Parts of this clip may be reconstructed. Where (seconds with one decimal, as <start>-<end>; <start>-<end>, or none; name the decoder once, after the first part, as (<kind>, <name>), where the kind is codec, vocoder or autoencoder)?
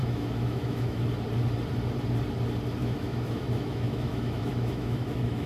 0.0-1.0 (autoencoder, DAC-VAE); 2.8-5.5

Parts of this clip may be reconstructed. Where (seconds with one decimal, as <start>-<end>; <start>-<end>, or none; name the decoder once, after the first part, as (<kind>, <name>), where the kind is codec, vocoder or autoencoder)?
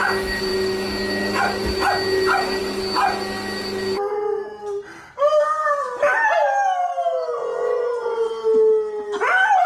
none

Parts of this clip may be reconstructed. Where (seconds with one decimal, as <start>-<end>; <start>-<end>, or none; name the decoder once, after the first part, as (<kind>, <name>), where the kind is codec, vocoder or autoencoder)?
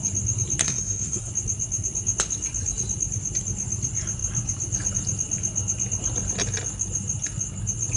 0.6-1.3 (codec, SNAC)